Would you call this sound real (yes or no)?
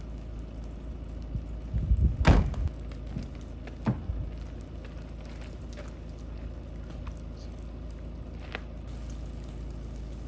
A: yes